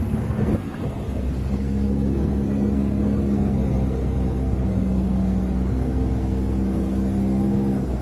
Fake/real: fake